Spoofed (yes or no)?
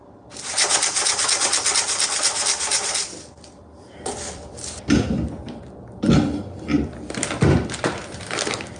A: yes